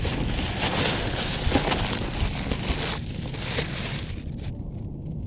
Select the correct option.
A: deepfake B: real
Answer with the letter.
B